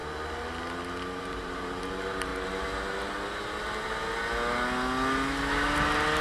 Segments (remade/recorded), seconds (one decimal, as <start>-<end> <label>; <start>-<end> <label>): 0.0-1.2 recorded; 1.2-2.3 remade; 2.3-6.2 recorded